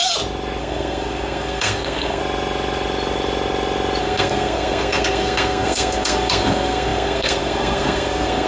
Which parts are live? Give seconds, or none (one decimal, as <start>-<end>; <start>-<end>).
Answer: 0.0-0.6; 2.2-4.0